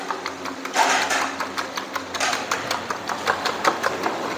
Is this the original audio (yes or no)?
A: no